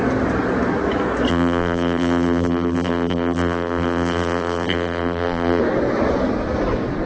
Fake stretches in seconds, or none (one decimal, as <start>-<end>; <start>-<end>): 1.3-5.6